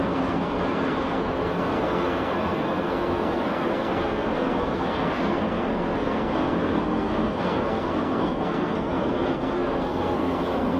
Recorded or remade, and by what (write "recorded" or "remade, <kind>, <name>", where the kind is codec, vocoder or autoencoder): remade, codec, SNAC